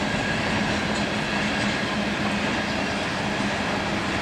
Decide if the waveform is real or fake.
real